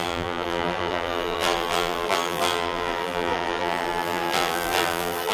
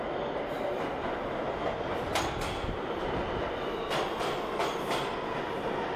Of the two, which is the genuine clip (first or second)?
second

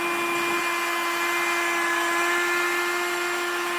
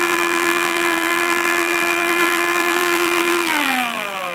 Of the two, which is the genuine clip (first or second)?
first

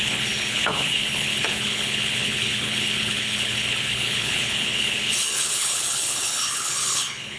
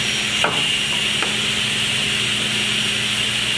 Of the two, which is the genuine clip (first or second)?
second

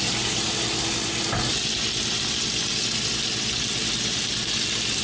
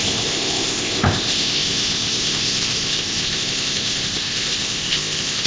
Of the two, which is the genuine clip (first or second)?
first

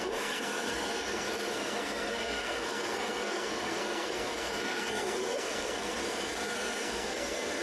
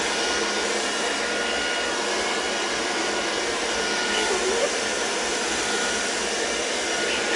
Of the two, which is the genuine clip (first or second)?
second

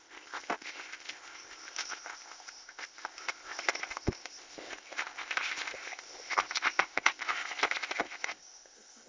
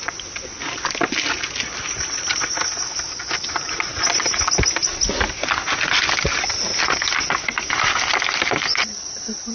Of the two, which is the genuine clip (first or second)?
second